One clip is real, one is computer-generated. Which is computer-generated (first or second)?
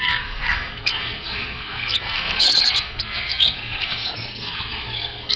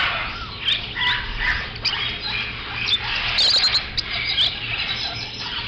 first